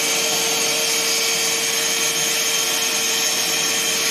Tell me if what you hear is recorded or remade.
recorded